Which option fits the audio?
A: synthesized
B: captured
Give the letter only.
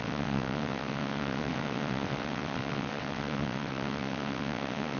A